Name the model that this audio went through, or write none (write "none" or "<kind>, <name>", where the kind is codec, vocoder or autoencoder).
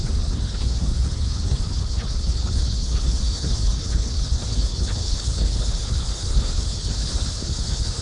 codec, HILCodec